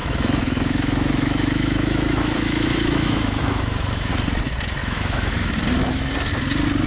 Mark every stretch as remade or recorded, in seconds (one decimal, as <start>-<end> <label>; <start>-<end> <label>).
0.0-4.1 remade; 4.1-4.8 recorded; 4.8-5.5 remade; 5.5-6.9 recorded